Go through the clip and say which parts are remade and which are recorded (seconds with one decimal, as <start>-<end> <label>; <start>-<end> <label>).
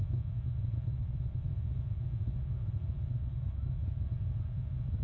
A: 0.0-0.9 recorded; 0.9-1.5 remade; 1.5-3.1 recorded; 3.1-3.8 remade; 3.8-5.0 recorded